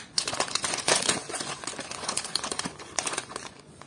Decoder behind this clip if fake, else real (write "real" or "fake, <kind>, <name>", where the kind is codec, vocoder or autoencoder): fake, vocoder, Vocos